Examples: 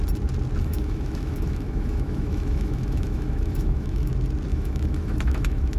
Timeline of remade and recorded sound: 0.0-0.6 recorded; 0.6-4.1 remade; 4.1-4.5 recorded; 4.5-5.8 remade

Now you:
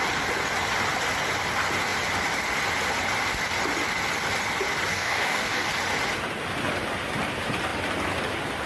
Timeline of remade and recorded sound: 0.0-4.9 recorded; 4.9-5.7 remade; 5.7-8.7 recorded

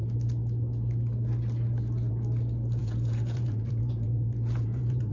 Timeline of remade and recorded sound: 0.0-2.8 recorded; 2.8-5.1 remade

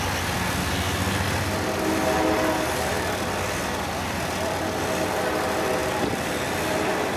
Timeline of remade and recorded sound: 0.0-7.2 recorded